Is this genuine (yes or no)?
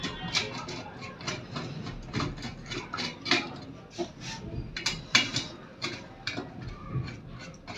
yes